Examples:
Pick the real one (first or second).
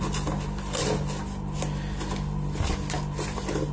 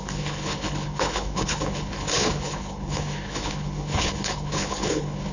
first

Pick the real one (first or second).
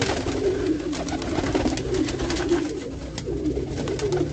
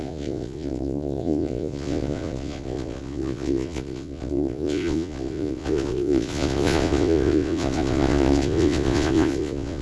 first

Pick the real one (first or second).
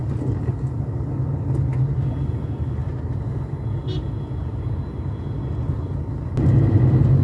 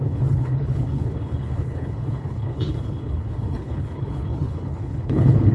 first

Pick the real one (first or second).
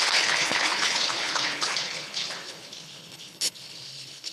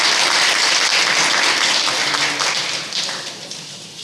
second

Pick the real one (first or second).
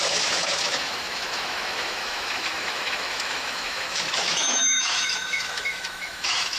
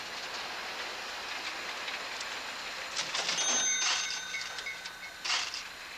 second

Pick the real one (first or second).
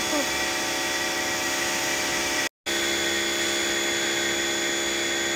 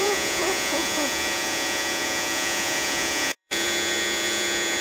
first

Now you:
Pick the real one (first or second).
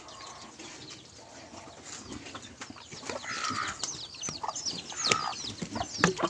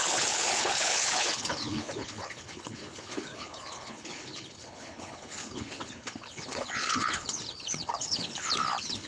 first